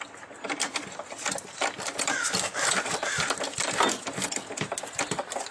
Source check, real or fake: real